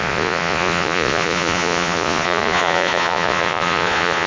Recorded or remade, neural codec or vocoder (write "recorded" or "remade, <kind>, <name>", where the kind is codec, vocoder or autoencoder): remade, vocoder, Vocos